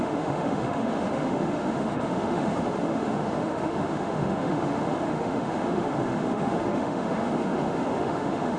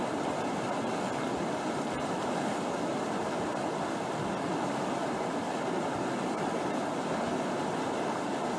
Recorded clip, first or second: second